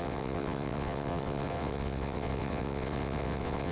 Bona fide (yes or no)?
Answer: no